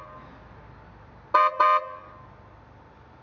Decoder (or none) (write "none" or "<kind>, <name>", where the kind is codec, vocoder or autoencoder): none